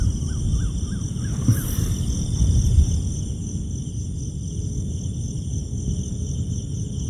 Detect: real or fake real